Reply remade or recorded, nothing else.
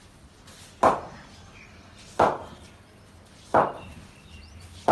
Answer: recorded